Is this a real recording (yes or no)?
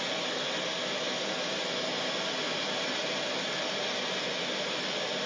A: yes